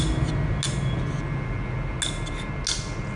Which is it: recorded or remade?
recorded